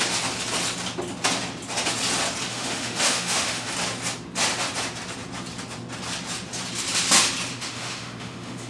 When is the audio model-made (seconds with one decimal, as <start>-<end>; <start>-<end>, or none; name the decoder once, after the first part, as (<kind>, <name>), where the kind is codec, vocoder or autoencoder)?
2.5-3.7 (autoencoder, DAC-VAE); 7.5-8.7